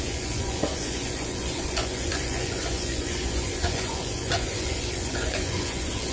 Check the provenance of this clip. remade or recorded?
remade